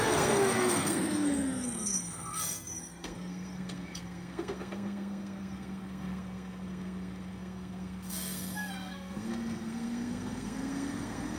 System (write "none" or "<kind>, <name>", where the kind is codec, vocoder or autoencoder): codec, SNAC